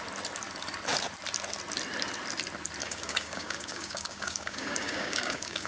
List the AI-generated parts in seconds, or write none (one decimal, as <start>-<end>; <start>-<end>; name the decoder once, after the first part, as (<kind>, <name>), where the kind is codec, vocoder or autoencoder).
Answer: 2.8-5.7 (codec, DAC)